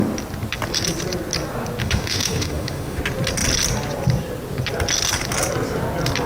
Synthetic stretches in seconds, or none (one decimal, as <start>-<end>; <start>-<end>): 1.8-3.0